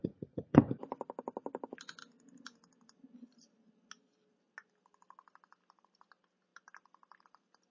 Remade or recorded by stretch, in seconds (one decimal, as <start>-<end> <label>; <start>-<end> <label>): 0.0-0.6 remade; 0.6-7.7 recorded